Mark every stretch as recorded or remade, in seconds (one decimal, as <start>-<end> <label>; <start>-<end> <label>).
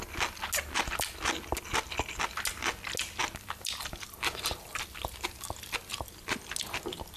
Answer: 0.0-7.2 recorded